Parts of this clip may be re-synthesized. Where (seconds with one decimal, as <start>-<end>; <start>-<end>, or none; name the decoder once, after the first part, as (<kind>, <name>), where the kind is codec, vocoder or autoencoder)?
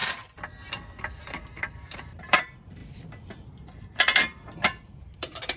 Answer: 1.2-2.8 (vocoder, BigVGAN v2); 4.2-5.6